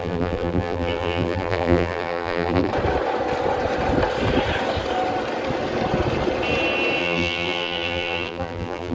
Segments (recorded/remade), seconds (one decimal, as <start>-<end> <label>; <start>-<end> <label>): 0.0-2.7 remade; 2.7-7.0 recorded; 7.0-8.9 remade